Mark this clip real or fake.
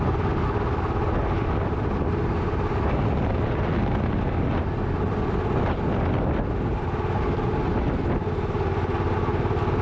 real